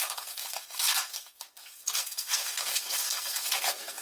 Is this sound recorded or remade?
remade